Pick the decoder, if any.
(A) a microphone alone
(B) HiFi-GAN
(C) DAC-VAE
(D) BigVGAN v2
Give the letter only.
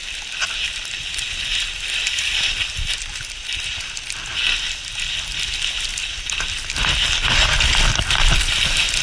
A